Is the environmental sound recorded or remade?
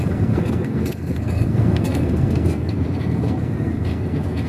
remade